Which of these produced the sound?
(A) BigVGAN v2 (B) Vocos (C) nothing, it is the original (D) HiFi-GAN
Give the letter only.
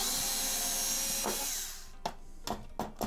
C